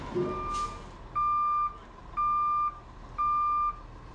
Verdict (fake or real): real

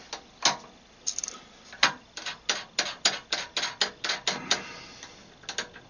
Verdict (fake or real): real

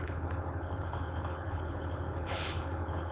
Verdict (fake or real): fake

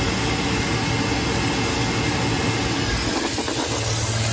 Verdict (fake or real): real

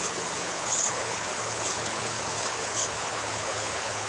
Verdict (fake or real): fake